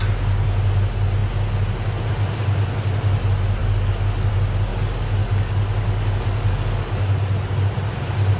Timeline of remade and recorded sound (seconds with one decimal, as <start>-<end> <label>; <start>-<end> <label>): 0.0-3.6 recorded; 3.6-4.3 remade; 4.3-4.7 recorded; 4.7-7.0 remade; 7.0-8.4 recorded